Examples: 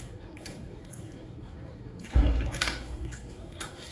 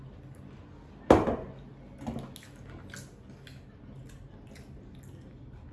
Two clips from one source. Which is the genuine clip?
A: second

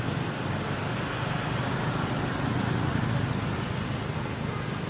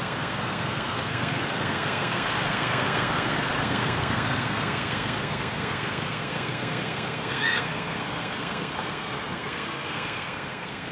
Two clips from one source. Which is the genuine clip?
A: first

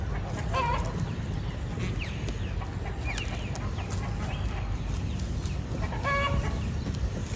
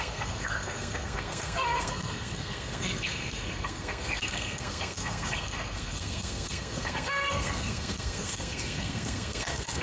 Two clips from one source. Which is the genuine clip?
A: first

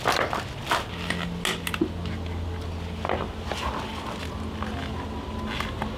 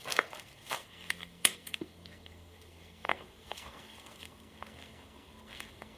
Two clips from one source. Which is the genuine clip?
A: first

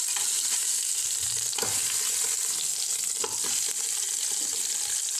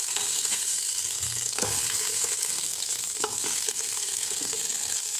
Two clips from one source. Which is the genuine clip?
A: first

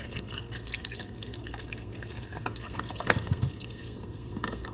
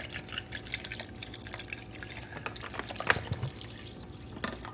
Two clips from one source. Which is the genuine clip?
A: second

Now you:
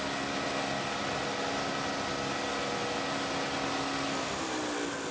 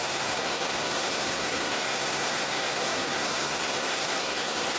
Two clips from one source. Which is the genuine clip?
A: first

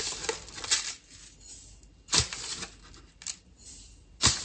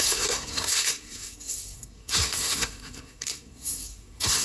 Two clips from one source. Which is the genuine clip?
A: first